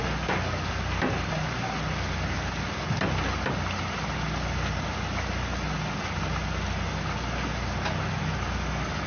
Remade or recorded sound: recorded